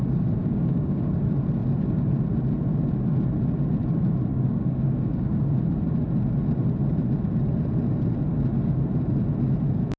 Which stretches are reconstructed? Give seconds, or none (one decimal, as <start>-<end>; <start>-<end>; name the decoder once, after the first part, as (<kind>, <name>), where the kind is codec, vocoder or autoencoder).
0.4-1.1 (codec, DAC); 4.3-5.5